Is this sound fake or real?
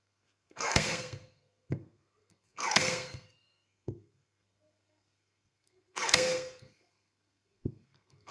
fake